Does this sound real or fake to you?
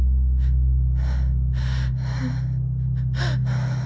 real